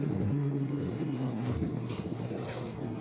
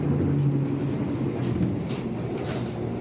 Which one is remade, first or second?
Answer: first